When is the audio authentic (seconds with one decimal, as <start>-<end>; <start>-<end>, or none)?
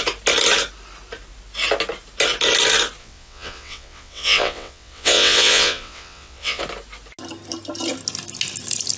0.0-3.0; 6.6-9.0